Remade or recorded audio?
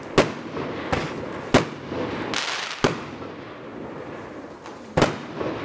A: recorded